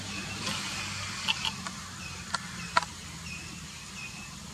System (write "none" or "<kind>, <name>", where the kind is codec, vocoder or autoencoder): none